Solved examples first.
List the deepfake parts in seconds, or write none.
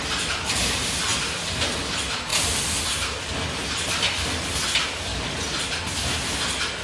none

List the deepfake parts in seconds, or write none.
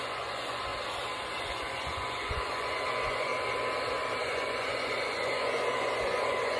0.0-0.7 (vocoder, Vocos); 1.4-3.3; 4.2-6.6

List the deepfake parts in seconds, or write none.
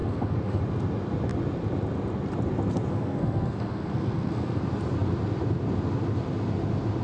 0.0-0.6 (codec, SNAC); 2.9-4.6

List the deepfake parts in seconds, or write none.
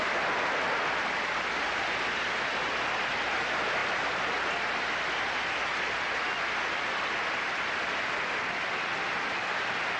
none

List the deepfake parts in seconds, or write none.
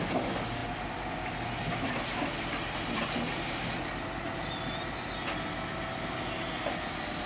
none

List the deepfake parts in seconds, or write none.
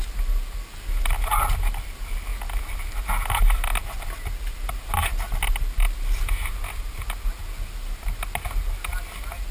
none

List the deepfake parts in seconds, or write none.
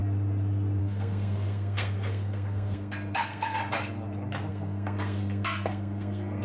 0.8-3.6 (codec, SNAC); 4.5-6.4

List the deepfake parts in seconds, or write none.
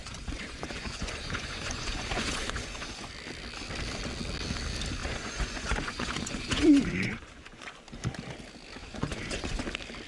0.0-3.1 (vocoder, Vocos); 5.0-7.8; 8.8-9.6